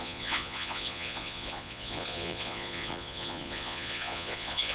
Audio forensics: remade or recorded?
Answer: remade